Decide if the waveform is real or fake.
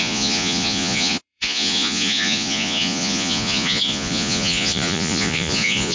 fake